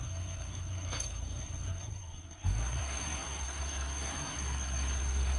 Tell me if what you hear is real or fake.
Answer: fake